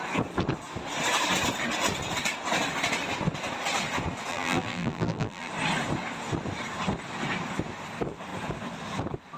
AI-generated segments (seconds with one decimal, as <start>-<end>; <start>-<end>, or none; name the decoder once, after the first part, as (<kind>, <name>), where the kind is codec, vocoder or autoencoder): 4.3-5.5 (vocoder, BigVGAN v2)